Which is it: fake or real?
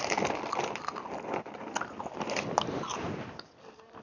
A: real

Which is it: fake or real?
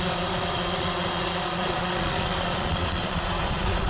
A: fake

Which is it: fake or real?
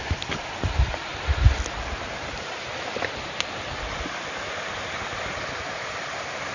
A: fake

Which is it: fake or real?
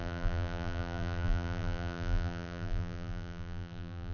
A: fake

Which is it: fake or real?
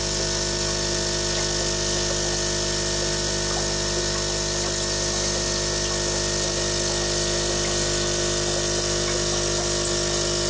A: real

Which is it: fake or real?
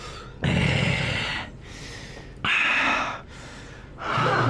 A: real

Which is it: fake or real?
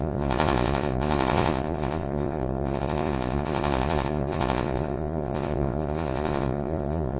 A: fake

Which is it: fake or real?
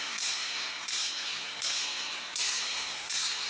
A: fake